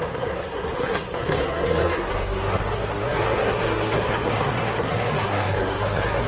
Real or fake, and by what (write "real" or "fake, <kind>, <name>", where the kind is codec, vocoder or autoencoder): fake, codec, SNAC